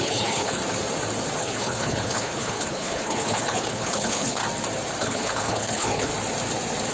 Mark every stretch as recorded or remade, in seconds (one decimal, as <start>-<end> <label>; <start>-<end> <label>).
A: 0.0-0.6 remade; 0.6-1.4 recorded; 1.4-4.4 remade; 4.4-5.0 recorded; 5.0-6.1 remade; 6.1-6.9 recorded